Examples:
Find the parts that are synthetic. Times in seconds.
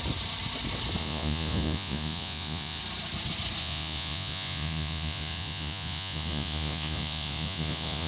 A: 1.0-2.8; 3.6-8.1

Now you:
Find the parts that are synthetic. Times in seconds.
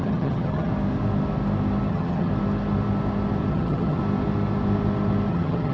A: 0.0-0.7; 1.9-2.3; 3.5-4.0; 5.3-5.7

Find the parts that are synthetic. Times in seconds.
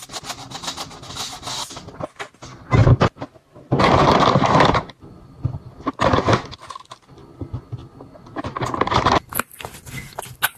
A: none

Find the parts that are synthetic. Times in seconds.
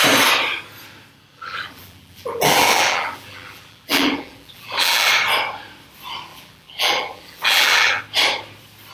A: 1.3-5.1; 6.3-8.0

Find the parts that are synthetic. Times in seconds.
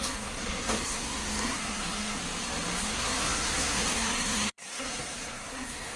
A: 0.0-2.2; 2.8-6.0